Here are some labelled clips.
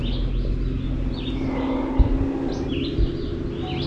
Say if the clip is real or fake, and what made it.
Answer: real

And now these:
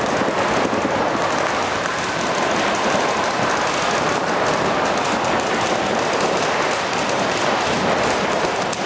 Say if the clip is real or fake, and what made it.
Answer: real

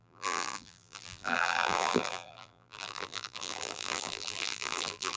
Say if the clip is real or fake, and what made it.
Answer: fake, vocoder, BigVGAN v2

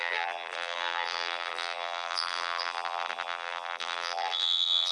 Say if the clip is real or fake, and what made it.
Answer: fake, vocoder, BigVGAN v2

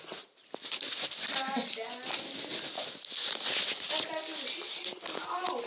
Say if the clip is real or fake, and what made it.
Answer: real